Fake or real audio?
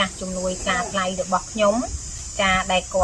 real